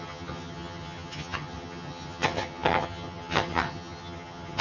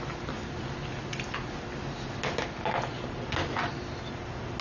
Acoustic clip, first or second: second